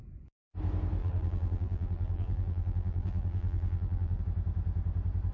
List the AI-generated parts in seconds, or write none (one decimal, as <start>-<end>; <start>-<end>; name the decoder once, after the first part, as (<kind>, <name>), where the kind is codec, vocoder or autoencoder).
1.0-4.2 (vocoder, BigVGAN v2)